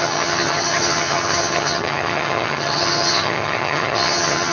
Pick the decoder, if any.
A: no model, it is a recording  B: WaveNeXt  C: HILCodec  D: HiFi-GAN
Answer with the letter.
D